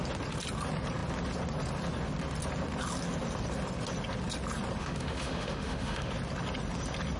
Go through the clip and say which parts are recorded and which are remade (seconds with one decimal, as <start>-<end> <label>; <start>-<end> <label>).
0.0-4.8 recorded; 4.8-6.1 remade; 6.1-7.2 recorded